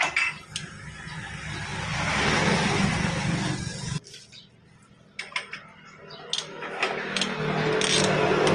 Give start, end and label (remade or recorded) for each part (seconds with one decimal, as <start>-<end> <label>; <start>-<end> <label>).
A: 0.0-6.5 recorded; 6.5-7.2 remade; 7.2-8.5 recorded